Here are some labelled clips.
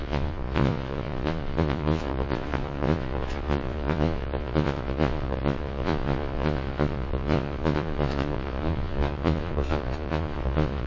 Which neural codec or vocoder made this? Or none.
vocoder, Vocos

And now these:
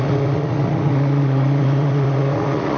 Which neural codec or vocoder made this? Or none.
vocoder, Vocos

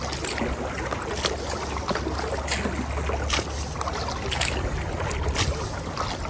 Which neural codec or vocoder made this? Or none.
none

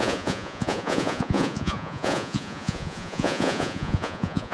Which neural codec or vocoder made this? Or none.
vocoder, Vocos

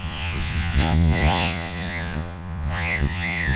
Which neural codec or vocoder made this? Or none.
vocoder, Vocos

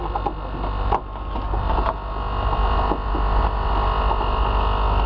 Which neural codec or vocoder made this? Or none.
none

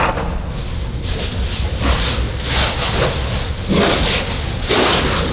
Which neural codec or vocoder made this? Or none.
none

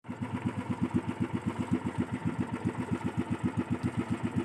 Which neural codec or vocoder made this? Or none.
none